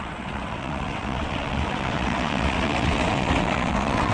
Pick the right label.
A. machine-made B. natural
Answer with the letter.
A